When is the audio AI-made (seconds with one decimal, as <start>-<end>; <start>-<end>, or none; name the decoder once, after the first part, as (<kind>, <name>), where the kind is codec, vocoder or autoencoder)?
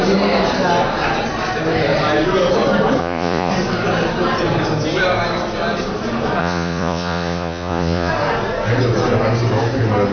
3.0-3.5 (vocoder, Vocos); 6.4-8.1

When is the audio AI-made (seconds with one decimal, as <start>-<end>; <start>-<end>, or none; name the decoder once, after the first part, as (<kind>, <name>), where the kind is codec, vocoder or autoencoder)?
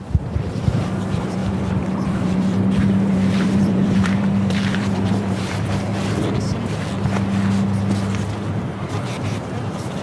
0.0-5.9 (vocoder, BigVGAN v2); 8.6-10.0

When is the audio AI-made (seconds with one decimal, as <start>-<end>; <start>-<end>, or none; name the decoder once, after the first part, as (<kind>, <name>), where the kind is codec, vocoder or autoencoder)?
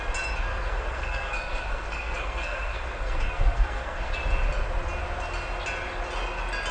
0.5-4.1 (codec, SNAC)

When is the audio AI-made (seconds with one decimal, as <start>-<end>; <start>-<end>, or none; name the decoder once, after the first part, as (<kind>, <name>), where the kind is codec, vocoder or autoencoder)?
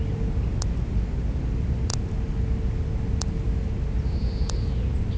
none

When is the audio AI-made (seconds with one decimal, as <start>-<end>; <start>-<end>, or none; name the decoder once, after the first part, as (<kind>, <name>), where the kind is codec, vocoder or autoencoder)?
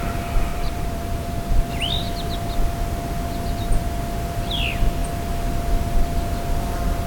0.5-1.7 (vocoder, BigVGAN v2)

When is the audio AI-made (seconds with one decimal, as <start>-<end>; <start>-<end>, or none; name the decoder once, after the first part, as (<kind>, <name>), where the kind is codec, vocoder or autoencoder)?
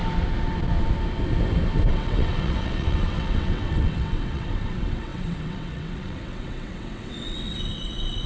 1.9-8.3 (vocoder, WaveNeXt)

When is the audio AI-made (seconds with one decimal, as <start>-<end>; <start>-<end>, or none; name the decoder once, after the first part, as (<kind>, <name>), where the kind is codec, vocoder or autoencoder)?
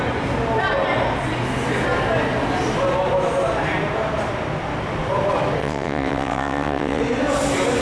5.6-7.0 (vocoder, WaveNeXt)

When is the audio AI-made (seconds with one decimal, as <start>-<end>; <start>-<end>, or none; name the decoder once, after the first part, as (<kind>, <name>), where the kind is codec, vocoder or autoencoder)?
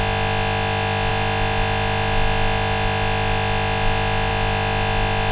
none